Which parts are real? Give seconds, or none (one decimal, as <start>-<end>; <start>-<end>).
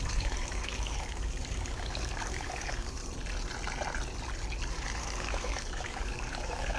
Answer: 3.0-5.0